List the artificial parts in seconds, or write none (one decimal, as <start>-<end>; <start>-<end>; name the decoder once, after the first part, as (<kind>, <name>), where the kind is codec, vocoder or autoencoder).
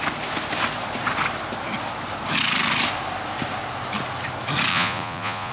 4.7-5.5 (vocoder, Vocos)